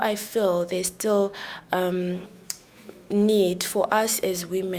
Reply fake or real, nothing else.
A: fake